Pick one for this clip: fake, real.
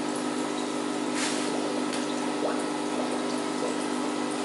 real